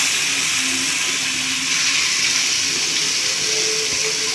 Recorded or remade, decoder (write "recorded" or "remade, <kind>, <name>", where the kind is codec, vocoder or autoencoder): recorded